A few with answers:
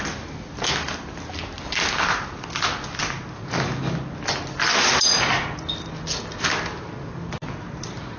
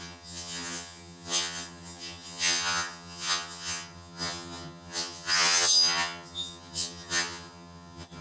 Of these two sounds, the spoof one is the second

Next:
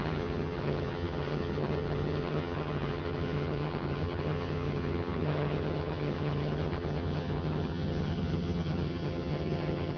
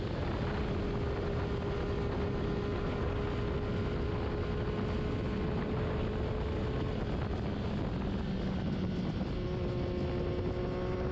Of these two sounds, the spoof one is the first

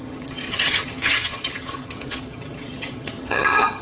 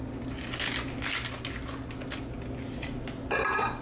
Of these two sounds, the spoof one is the first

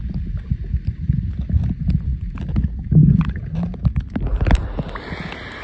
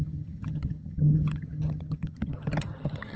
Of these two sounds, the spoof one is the second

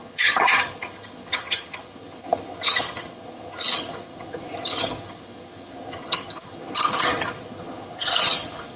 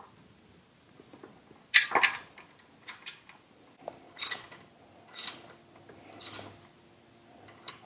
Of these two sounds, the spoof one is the first